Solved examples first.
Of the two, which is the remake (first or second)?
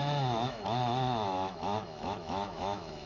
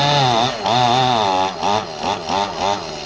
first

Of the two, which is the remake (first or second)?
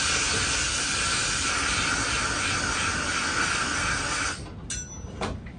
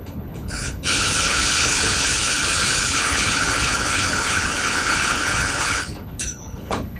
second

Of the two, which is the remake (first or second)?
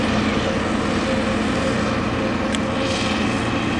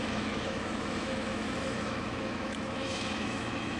second